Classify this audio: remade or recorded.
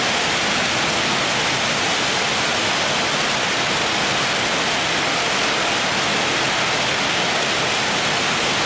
recorded